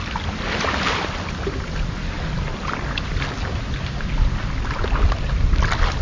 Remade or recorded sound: recorded